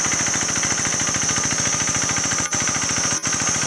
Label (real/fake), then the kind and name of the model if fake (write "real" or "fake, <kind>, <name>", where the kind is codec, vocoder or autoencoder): real